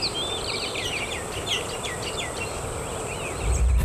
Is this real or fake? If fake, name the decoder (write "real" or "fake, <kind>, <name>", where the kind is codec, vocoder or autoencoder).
real